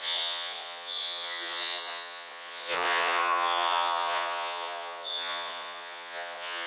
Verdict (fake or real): fake